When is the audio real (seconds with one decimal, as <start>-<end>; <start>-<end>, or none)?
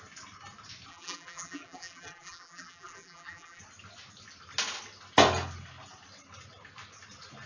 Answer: 0.0-0.9; 3.6-7.5